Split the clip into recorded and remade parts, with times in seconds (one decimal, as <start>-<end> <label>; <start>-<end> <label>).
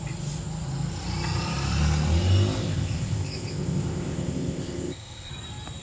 0.0-2.6 recorded; 2.6-5.3 remade; 5.3-5.8 recorded